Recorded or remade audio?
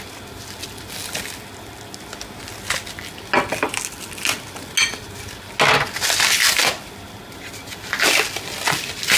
recorded